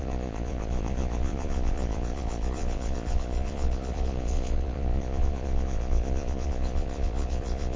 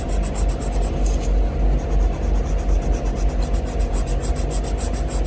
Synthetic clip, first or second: first